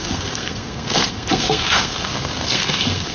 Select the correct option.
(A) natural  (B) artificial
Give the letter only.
B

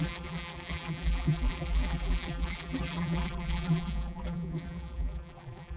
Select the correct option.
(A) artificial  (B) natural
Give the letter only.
A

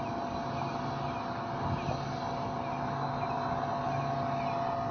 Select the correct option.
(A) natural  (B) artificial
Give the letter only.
A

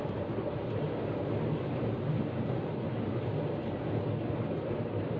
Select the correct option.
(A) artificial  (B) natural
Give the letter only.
B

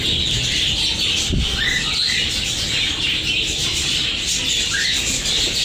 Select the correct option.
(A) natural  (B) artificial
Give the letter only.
A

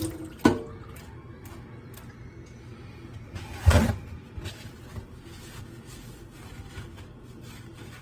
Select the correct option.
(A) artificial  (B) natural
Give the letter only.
B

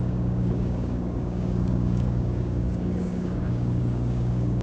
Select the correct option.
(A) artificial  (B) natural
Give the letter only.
A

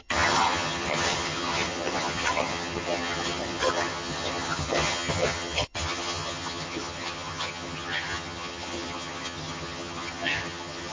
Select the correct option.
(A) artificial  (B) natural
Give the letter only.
A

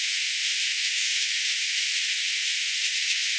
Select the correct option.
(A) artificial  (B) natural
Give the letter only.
A